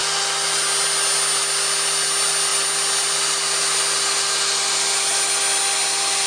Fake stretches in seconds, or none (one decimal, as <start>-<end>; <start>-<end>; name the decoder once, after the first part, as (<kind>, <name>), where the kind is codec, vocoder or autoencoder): none